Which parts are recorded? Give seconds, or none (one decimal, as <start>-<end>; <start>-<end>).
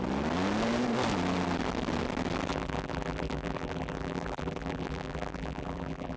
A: 0.0-2.5